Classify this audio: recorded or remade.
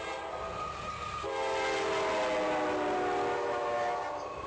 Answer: recorded